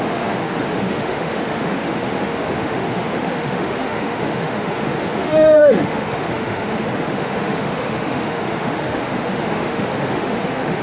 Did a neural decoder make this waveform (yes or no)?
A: yes